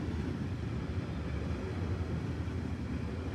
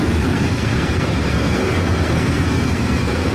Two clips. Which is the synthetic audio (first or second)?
second